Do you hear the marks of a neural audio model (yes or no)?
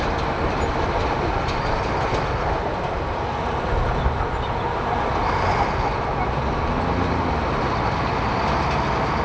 no